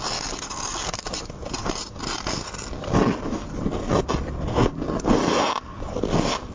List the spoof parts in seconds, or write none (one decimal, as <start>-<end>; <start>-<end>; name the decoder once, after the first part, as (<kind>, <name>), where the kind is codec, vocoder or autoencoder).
none